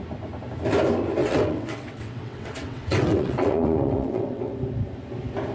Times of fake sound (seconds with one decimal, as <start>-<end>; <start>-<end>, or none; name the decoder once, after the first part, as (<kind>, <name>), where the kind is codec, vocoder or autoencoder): 1.2-4.5 (vocoder, WaveNeXt)